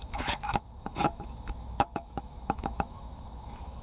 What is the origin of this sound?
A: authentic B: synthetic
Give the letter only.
B